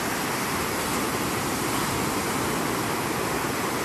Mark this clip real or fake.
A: real